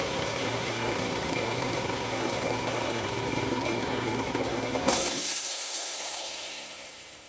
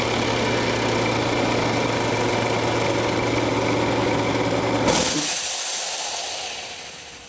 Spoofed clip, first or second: first